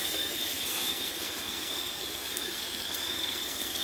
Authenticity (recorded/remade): remade